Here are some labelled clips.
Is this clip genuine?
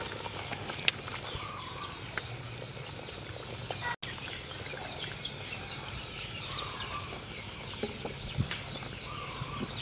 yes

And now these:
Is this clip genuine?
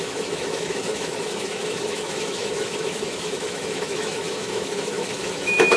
no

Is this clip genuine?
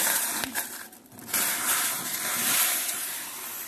yes